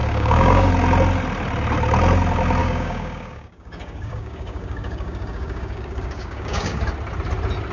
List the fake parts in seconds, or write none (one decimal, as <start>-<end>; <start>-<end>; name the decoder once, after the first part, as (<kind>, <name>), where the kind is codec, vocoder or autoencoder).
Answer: 0.0-0.7 (codec, DAC); 2.6-6.8